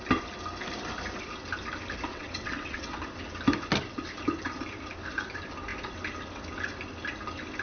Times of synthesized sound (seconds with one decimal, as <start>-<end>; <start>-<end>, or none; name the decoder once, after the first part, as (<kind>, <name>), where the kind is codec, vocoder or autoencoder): 2.1-2.9 (vocoder, WaveNeXt)